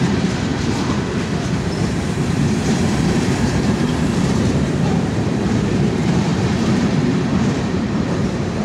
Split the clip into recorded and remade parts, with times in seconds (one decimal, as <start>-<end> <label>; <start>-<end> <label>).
0.0-0.5 remade; 0.5-1.3 recorded; 1.3-8.6 remade

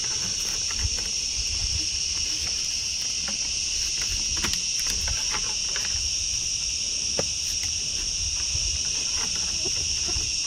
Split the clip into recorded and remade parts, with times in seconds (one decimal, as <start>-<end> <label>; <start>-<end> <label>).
0.0-2.8 remade; 2.8-6.3 recorded; 6.3-10.5 remade

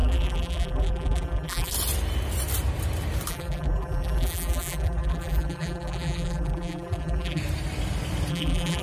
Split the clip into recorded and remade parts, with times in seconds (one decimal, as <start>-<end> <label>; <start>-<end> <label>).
0.0-1.7 remade; 1.7-3.3 recorded; 3.3-7.4 remade; 7.4-8.3 recorded; 8.3-8.8 remade

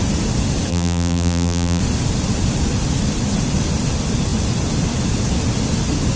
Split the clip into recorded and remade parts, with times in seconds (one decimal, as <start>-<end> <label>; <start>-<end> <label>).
0.0-0.7 recorded; 0.7-1.8 remade; 1.8-6.2 recorded

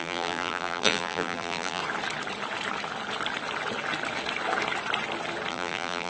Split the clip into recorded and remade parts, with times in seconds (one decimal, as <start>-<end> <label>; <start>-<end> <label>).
0.0-1.8 remade; 1.8-5.5 recorded; 5.5-6.1 remade

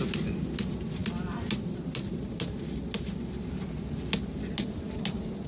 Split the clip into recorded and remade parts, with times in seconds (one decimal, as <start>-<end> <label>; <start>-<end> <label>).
0.0-5.5 recorded